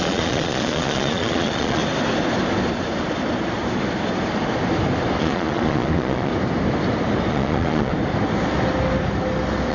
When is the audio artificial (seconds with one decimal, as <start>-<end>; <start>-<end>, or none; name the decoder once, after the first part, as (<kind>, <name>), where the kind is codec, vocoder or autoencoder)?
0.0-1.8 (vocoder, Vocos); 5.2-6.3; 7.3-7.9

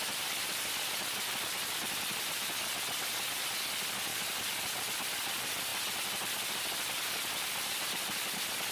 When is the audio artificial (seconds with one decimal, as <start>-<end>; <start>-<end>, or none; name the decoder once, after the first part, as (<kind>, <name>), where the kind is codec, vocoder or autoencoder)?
none

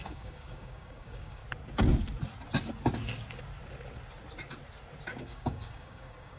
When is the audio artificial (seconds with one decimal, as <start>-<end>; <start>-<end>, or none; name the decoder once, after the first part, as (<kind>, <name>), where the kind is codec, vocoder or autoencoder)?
0.0-1.4 (codec, DAC); 5.2-6.4

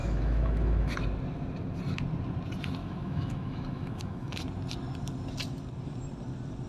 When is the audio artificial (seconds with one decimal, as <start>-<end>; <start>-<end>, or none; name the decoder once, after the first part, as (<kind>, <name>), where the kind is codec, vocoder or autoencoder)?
0.0-0.9 (autoencoder, DAC-VAE); 2.8-4.3